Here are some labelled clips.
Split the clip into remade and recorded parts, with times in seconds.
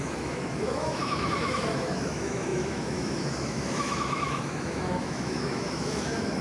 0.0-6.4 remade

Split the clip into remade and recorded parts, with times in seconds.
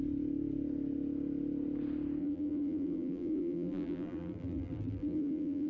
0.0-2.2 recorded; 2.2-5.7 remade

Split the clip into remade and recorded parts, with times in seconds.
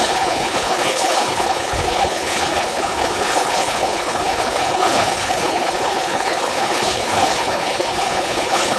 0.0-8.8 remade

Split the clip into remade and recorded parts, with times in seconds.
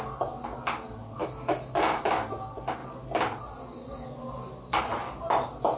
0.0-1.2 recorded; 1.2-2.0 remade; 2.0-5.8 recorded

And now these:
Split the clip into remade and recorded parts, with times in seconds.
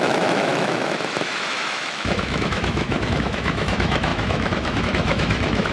0.0-5.7 remade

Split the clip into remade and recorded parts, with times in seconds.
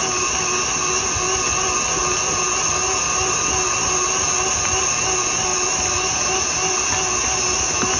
0.0-8.0 recorded